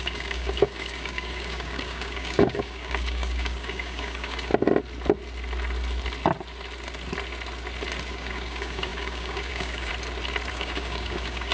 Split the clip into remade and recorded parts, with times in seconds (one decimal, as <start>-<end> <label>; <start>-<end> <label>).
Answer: 0.0-4.5 remade; 4.5-8.1 recorded; 8.1-9.9 remade; 9.9-10.5 recorded; 10.5-11.5 remade